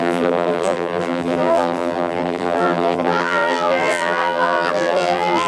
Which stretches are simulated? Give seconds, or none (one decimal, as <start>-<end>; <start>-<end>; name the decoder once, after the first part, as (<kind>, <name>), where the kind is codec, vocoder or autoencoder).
0.0-5.5 (vocoder, BigVGAN v2)